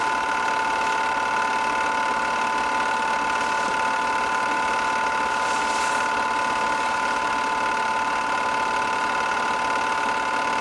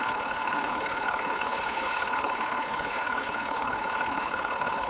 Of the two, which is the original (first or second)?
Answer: first